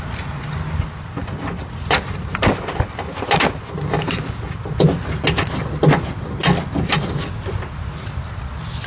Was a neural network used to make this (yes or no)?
no